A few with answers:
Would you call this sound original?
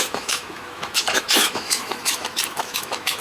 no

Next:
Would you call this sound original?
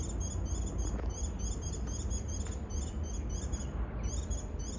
yes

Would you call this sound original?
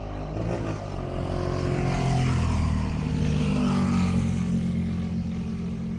yes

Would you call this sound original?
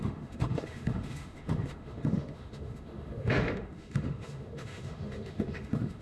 no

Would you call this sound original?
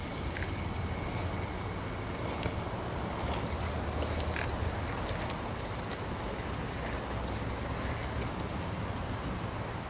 yes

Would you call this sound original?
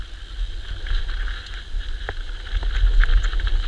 yes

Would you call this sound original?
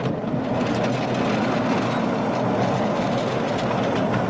yes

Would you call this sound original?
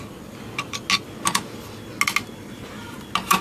yes